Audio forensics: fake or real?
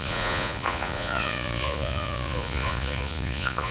fake